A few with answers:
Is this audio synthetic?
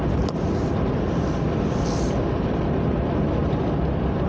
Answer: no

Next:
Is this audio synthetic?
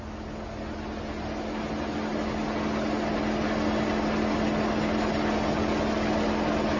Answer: no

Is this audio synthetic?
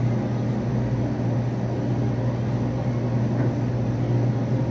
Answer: no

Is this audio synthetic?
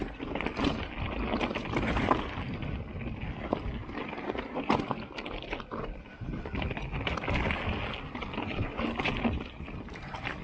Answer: no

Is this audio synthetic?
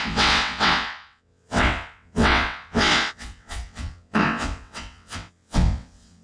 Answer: yes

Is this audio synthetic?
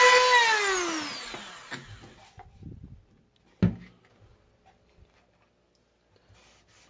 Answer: no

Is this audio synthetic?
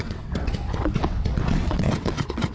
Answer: yes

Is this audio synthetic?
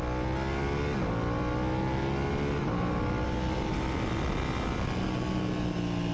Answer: no